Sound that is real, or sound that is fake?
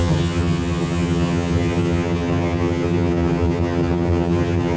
fake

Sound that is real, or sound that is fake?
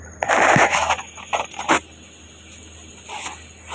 real